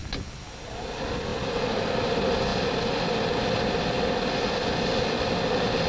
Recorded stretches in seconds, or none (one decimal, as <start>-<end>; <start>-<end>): 0.0-5.9